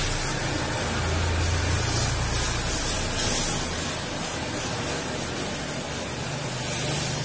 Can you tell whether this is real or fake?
real